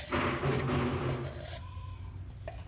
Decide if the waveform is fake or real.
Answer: real